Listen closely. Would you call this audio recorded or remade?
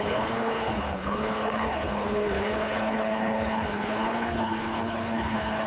remade